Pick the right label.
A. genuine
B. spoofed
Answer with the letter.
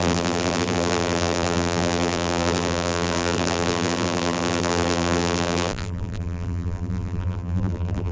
B